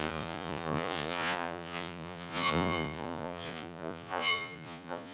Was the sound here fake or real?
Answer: fake